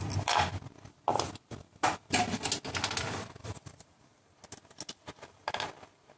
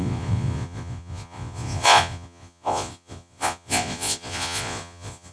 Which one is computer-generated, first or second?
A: second